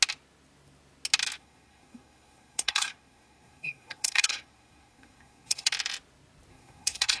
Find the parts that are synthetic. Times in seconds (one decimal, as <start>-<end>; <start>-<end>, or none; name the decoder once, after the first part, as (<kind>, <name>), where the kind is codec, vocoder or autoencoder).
1.4-5.7 (codec, SNAC); 6.5-7.2

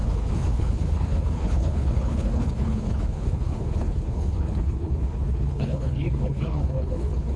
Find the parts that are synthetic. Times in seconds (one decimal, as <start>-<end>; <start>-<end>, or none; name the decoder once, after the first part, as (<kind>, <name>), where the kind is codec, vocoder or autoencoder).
0.0-7.4 (codec, HILCodec)

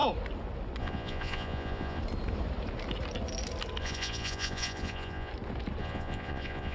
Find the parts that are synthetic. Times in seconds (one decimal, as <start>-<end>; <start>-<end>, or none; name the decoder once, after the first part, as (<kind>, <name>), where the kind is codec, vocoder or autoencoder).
0.8-2.0 (vocoder, Vocos); 3.8-5.3; 5.8-6.7